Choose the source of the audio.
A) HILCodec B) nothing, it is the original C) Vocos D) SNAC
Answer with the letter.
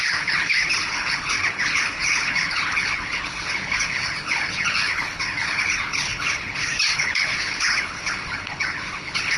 A